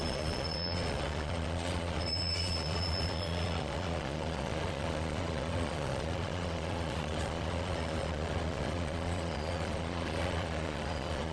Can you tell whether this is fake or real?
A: fake